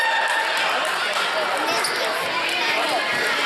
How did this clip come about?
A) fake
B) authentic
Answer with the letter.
B